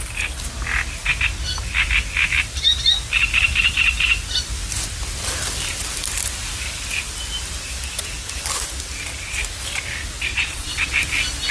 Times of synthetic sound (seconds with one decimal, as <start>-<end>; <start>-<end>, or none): 10.3-11.0